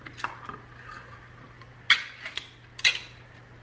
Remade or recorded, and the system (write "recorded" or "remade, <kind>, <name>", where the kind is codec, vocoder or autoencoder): recorded